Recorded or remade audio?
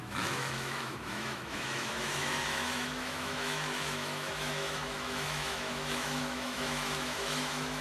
remade